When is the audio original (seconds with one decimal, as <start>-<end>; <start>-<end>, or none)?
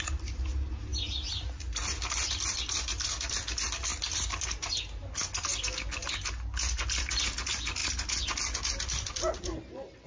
0.0-10.1